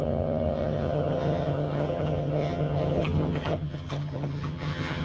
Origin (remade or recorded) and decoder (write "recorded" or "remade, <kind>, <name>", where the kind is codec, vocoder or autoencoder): remade, vocoder, HiFi-GAN